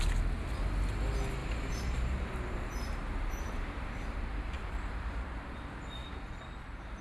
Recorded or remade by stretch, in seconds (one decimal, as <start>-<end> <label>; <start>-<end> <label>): 0.0-1.4 recorded; 1.4-5.6 remade; 5.6-7.0 recorded